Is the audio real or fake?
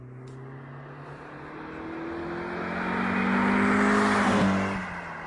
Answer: real